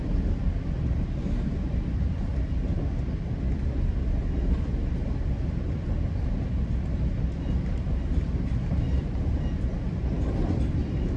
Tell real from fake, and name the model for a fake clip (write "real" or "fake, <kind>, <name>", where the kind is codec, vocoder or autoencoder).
real